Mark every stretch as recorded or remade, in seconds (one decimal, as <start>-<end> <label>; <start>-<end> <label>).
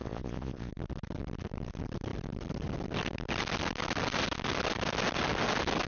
0.0-0.7 remade; 0.7-5.9 recorded